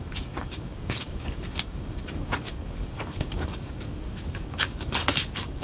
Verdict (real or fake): fake